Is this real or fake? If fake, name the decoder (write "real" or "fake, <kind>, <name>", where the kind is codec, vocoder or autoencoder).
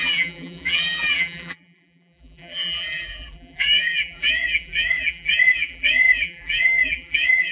fake, vocoder, BigVGAN v2